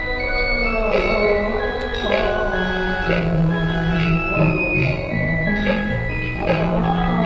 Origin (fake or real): fake